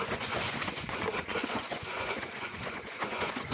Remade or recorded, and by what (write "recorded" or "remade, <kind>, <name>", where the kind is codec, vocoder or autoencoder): remade, vocoder, Vocos